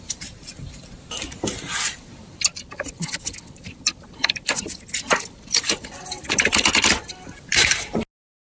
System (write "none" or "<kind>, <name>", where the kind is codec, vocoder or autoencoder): none